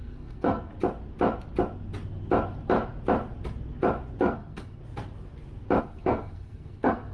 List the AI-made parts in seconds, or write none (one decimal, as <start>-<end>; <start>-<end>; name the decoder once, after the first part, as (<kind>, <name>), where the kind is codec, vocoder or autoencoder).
0.0-0.7 (codec, SNAC); 4.2-4.8; 5.8-7.1